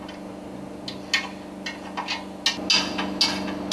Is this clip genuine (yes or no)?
yes